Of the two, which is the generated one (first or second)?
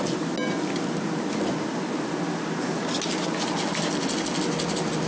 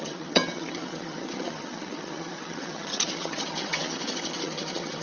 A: second